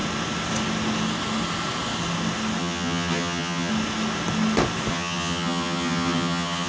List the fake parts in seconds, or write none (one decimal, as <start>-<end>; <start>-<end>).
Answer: 2.6-3.7; 4.9-6.7